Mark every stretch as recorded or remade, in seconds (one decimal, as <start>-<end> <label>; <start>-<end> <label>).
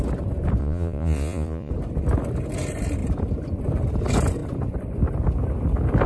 0.0-0.6 recorded; 0.6-1.7 remade; 1.7-6.1 recorded